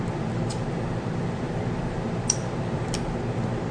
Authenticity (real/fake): fake